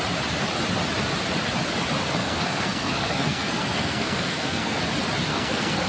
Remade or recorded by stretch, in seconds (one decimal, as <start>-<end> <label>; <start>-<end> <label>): 0.0-2.2 recorded; 2.2-4.8 remade; 4.8-5.3 recorded; 5.3-5.9 remade